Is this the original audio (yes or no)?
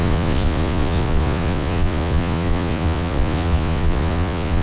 no